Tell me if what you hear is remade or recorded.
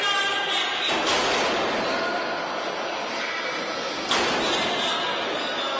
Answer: recorded